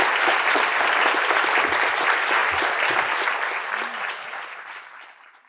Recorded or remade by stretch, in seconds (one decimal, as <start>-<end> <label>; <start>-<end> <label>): 0.0-5.5 recorded